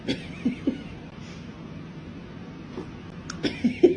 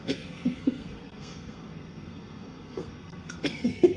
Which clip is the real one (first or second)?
first